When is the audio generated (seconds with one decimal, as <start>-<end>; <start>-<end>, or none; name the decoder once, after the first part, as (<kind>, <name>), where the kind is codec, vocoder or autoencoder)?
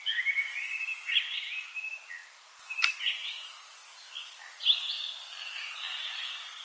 none